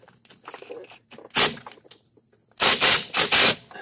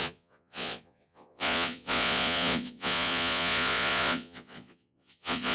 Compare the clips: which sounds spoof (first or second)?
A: second